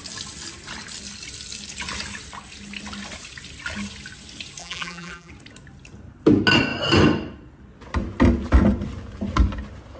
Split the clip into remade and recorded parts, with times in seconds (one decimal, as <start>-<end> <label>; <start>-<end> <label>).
0.0-4.6 recorded; 4.6-5.3 remade; 5.3-10.0 recorded